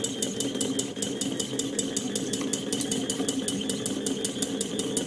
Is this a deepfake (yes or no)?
no